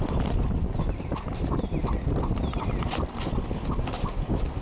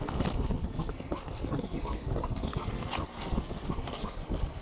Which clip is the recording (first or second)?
first